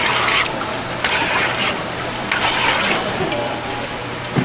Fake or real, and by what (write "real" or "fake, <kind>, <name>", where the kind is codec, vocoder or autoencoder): fake, vocoder, BigVGAN v2